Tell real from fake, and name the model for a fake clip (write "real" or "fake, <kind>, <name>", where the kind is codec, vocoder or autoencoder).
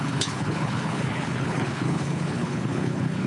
fake, codec, HILCodec